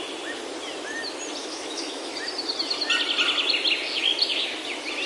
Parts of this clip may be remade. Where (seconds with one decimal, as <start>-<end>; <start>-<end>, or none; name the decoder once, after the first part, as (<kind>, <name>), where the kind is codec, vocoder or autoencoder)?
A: 1.4-2.1 (autoencoder, DAC-VAE)